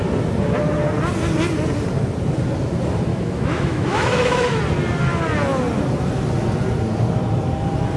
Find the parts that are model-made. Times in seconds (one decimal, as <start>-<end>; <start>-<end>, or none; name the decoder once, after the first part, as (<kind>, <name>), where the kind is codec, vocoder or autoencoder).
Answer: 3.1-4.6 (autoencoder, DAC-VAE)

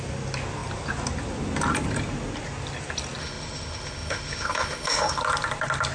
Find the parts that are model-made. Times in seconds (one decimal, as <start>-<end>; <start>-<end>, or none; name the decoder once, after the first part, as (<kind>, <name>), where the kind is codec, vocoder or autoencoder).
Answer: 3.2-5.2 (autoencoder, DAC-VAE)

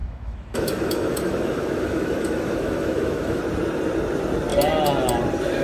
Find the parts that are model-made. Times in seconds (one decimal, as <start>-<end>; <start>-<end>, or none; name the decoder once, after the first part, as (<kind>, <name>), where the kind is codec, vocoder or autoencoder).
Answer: 0.0-3.4 (autoencoder, DAC-VAE)